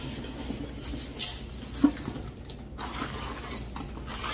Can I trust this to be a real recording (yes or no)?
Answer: yes